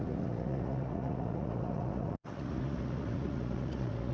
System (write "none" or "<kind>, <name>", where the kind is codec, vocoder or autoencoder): vocoder, Vocos